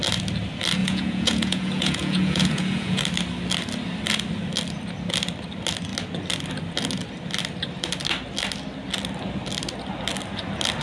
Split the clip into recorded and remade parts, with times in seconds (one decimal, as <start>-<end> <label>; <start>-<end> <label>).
0.0-0.8 recorded; 0.8-3.0 remade; 3.0-10.8 recorded